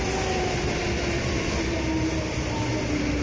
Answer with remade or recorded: recorded